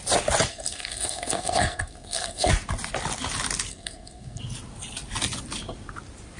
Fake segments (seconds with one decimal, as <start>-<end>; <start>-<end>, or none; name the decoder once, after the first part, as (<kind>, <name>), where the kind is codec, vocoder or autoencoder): 0.5-2.5 (codec, SNAC); 3.7-4.4